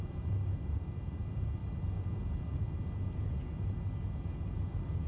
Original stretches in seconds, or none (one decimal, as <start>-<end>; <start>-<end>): 0.0-5.1